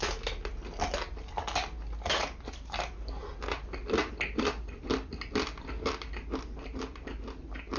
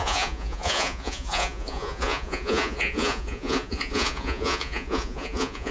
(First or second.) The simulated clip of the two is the second